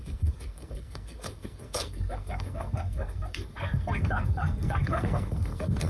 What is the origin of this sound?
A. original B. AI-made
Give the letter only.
B